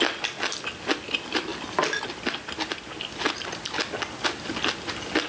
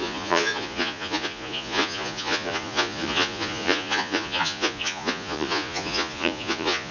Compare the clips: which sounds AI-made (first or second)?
second